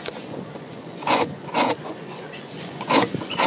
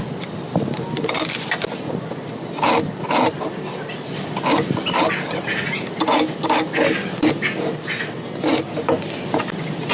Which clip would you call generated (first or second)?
first